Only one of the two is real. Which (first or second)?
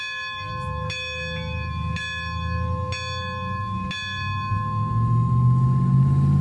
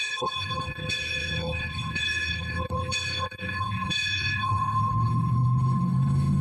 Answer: first